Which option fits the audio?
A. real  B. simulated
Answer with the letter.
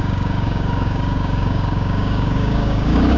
B